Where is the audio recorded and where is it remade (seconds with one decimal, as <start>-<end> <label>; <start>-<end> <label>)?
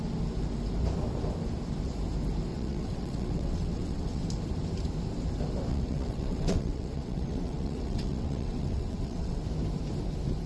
0.0-2.5 recorded; 2.5-4.2 remade; 4.2-5.7 recorded; 5.7-9.4 remade; 9.4-10.5 recorded